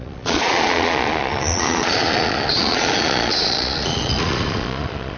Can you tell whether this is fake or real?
fake